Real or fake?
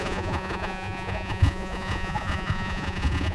fake